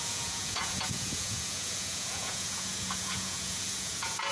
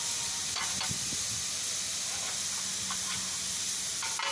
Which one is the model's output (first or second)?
first